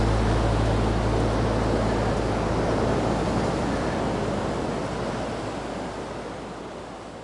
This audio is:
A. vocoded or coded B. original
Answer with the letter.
B